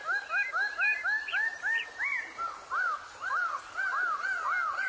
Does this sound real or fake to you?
real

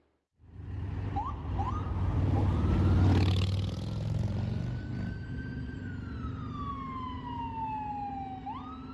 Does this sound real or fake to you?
real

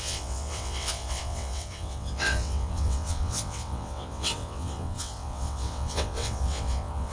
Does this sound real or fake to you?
fake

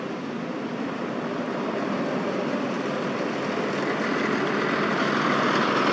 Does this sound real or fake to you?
real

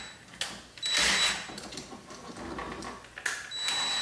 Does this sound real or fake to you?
real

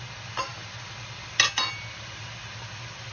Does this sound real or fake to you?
real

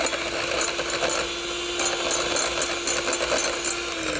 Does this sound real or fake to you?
real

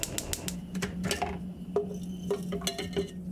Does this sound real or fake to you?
real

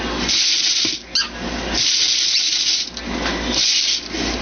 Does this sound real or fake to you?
real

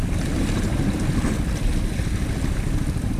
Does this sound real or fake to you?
real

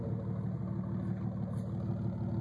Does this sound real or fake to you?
real